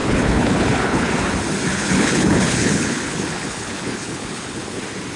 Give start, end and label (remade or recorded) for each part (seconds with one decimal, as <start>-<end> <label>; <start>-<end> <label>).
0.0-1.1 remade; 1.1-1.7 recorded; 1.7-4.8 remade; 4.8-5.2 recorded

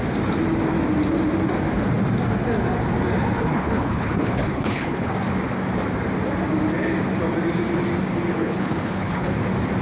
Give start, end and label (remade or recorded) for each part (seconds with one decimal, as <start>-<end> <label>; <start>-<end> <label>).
0.0-3.5 recorded; 3.5-5.1 remade; 5.1-8.4 recorded; 8.4-9.3 remade; 9.3-9.8 recorded

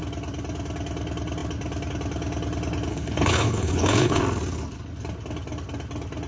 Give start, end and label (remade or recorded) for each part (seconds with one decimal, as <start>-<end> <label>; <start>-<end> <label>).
0.0-2.9 recorded; 2.9-4.2 remade; 4.2-6.3 recorded

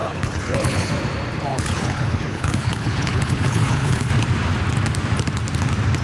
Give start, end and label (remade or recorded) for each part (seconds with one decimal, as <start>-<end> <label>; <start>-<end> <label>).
0.0-0.9 remade; 0.9-1.5 recorded; 1.5-4.1 remade; 4.1-6.0 recorded